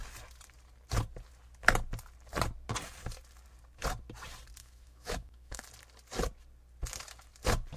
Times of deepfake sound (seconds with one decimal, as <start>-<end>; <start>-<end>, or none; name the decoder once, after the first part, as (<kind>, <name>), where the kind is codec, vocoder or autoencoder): 4.6-5.6 (autoencoder, DAC-VAE)